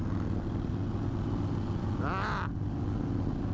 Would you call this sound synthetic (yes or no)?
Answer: no